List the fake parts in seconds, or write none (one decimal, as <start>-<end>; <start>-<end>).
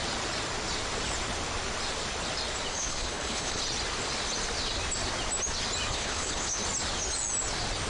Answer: 2.7-3.6; 5.9-6.6